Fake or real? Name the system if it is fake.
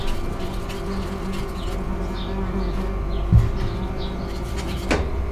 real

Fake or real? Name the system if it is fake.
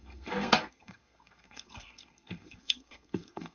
fake, codec, SNAC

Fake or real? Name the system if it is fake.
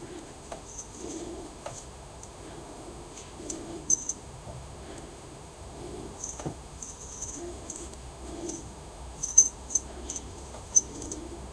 fake, autoencoder, DAC-VAE